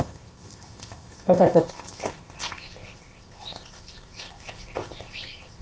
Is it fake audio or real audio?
fake